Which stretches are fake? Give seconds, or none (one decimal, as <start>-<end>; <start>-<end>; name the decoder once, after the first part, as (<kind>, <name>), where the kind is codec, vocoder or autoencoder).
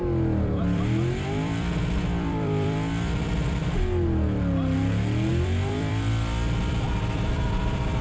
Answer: 0.0-3.6 (vocoder, BigVGAN v2); 5.3-8.0